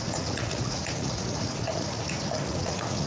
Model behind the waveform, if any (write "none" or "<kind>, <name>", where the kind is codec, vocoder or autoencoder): vocoder, Vocos